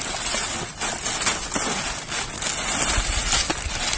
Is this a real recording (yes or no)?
yes